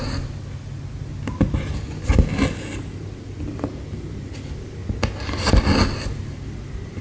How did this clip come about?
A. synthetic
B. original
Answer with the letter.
B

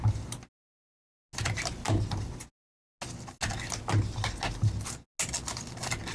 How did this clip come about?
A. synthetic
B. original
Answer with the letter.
B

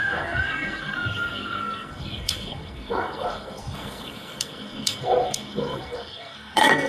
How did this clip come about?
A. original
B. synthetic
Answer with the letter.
B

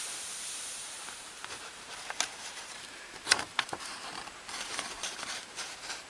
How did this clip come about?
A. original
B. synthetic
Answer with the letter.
B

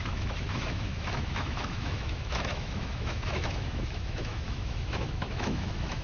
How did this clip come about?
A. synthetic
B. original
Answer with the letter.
A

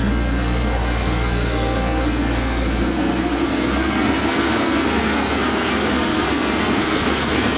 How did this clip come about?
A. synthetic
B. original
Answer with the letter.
A